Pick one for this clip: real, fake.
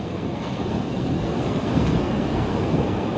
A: fake